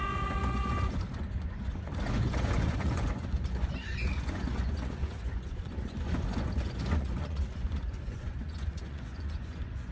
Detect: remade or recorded remade